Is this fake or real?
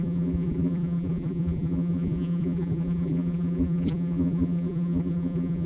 fake